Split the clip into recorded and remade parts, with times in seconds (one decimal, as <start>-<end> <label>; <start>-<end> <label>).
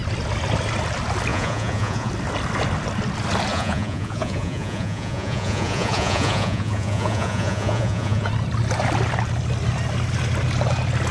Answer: 0.0-1.3 recorded; 1.3-2.1 remade; 2.1-3.5 recorded; 3.5-8.3 remade; 8.3-11.1 recorded